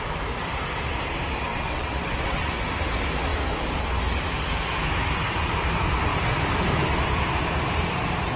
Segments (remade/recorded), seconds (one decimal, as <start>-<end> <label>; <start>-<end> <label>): 0.0-1.5 recorded; 1.5-2.6 remade; 2.6-8.4 recorded